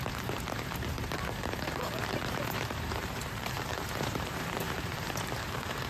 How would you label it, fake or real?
fake